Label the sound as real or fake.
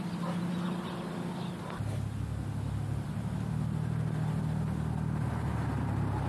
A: real